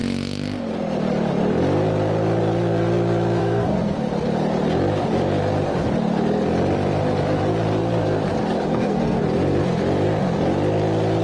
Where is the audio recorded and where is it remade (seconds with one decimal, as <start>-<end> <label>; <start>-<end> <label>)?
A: 0.0-3.4 recorded; 3.4-4.1 remade; 4.1-8.7 recorded; 8.7-9.2 remade; 9.2-11.2 recorded